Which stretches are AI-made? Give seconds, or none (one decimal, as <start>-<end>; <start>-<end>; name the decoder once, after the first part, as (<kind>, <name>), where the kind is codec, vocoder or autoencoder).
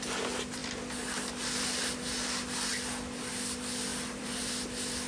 3.9-4.5 (vocoder, BigVGAN v2)